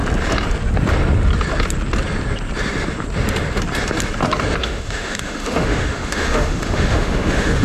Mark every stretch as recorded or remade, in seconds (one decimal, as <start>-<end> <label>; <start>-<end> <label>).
0.0-4.6 recorded; 4.6-7.6 remade